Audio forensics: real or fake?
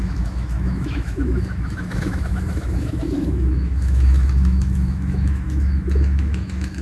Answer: fake